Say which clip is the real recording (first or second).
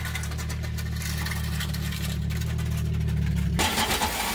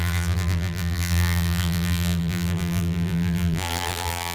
first